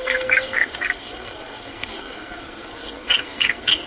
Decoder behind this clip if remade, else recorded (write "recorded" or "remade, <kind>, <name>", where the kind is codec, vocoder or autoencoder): remade, codec, SNAC